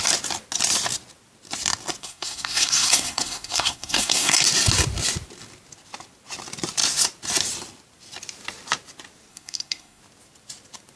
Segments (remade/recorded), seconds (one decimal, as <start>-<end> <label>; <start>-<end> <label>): 0.0-2.0 recorded; 2.0-4.4 remade; 4.4-9.3 recorded; 9.3-10.0 remade; 10.0-11.0 recorded